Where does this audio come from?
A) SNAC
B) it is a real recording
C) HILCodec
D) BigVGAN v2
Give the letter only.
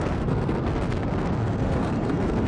A